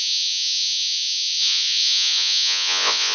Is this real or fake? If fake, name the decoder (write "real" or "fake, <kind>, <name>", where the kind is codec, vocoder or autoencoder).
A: fake, vocoder, Vocos